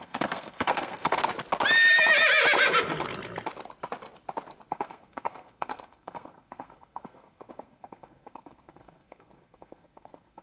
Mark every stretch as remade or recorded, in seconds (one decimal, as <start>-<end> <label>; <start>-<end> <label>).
0.0-1.2 remade; 1.2-4.7 recorded; 4.7-10.4 remade